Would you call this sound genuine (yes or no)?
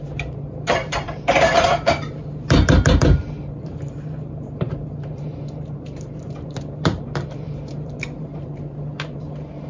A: no